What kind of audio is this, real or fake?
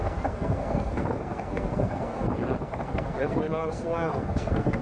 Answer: fake